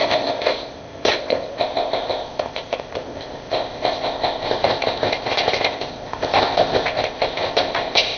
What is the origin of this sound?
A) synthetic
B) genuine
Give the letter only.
A